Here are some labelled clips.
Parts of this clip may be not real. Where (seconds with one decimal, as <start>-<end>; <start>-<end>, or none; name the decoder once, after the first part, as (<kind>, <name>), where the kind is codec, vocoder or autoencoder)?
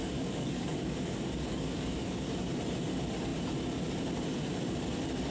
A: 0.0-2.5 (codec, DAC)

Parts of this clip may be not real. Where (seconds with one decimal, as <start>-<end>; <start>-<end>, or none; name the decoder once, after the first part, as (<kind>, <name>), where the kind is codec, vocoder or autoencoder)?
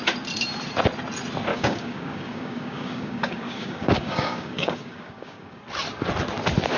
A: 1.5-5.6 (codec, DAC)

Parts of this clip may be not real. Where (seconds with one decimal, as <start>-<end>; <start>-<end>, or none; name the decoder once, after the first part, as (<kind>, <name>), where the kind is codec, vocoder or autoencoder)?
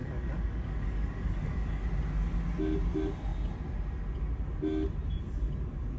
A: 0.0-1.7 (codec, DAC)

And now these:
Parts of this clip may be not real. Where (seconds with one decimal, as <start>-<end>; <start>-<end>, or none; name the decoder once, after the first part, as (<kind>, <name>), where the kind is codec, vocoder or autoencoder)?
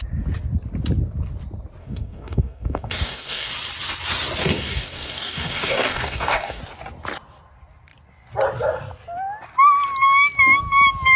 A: 1.8-3.5 (codec, DAC); 4.4-6.6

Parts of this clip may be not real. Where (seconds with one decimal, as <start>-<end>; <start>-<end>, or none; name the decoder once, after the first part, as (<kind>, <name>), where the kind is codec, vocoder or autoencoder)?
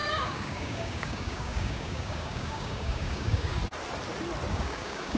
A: 0.0-3.6 (codec, DAC); 4.5-5.2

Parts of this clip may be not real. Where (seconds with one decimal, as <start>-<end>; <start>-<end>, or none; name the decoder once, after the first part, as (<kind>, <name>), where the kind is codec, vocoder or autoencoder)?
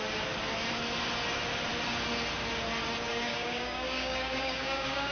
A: 3.1-5.1 (codec, DAC)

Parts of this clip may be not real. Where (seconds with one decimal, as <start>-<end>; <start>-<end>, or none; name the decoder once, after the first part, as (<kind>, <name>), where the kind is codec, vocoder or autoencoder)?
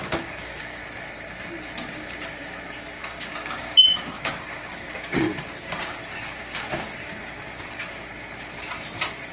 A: 0.0-0.8 (codec, DAC); 2.6-8.1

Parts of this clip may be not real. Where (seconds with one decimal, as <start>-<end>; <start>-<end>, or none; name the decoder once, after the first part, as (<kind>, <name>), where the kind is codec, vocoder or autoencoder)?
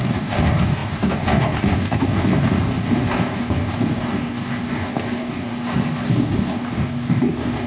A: 0.0-5.5 (codec, DAC); 6.1-7.7